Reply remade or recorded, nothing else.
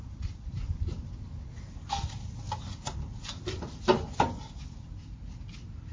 recorded